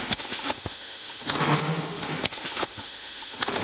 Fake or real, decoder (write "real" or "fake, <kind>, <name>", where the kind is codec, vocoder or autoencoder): fake, autoencoder, DAC-VAE